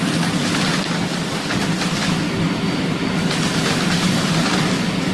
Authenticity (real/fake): real